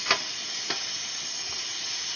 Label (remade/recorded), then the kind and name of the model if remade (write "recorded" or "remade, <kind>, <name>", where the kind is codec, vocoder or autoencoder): recorded